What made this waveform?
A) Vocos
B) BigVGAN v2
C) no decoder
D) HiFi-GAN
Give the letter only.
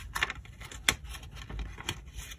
C